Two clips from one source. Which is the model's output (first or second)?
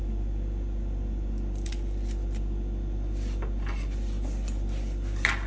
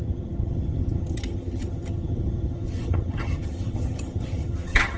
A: second